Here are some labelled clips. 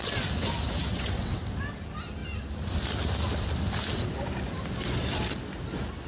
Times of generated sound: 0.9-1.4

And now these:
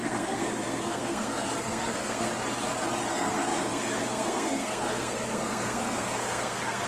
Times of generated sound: 0.0-2.3; 3.1-6.9

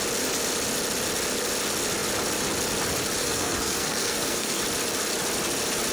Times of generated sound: 3.2-4.6

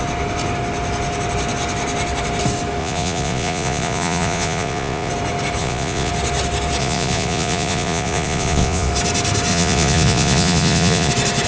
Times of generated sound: 2.8-5.1; 5.6-6.1; 6.8-8.9; 9.5-11.1

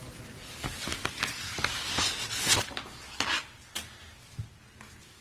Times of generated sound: none

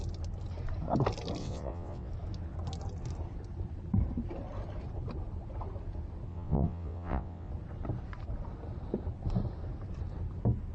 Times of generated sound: 1.4-2.1; 6.3-7.5

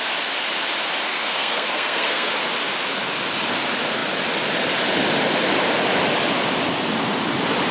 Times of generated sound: 1.1-2.3

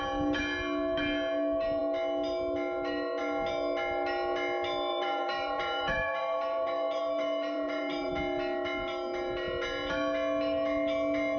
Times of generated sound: 4.9-8.1